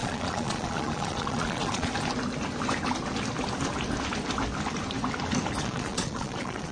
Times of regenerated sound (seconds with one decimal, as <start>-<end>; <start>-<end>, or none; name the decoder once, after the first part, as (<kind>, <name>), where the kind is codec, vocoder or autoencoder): 0.0-1.9 (vocoder, Vocos); 5.6-6.7